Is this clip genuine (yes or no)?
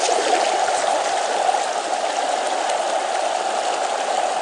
yes